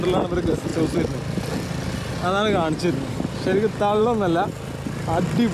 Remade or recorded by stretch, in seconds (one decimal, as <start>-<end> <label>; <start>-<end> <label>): 0.0-5.5 recorded